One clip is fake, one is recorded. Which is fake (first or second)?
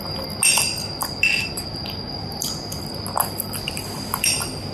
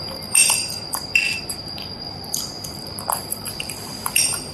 second